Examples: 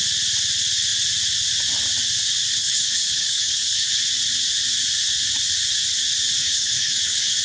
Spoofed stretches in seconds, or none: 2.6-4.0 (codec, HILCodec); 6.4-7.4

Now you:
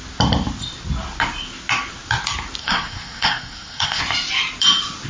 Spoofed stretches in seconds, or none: 2.6-4.0 (codec, SNAC)